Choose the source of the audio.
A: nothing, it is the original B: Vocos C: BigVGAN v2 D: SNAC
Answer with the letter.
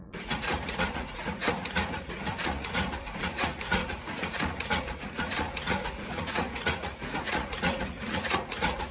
B